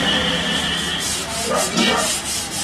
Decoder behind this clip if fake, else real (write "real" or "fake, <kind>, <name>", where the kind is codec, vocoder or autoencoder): real